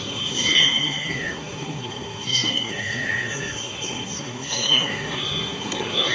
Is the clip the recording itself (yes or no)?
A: no